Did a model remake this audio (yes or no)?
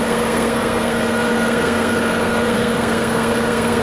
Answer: yes